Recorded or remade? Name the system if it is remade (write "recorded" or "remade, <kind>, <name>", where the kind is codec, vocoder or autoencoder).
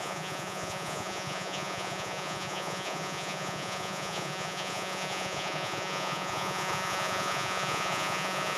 remade, vocoder, Vocos